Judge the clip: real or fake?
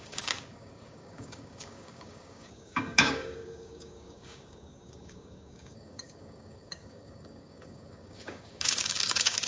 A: fake